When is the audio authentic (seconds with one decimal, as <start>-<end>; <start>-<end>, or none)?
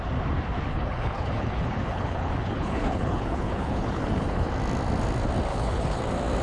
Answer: 0.0-0.7; 4.5-5.5; 6.0-6.4